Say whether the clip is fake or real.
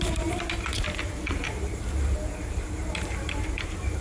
fake